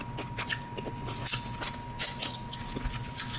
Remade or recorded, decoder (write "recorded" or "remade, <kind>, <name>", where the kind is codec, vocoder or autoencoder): recorded